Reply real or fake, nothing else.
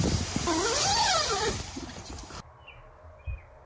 real